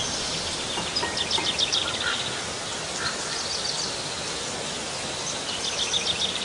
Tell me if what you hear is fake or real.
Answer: real